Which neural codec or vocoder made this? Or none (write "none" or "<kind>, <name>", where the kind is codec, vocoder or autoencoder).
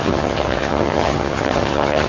vocoder, HiFi-GAN